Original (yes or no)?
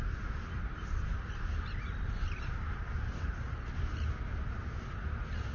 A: yes